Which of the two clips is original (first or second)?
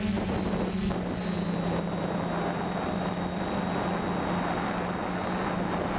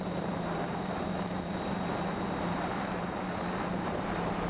first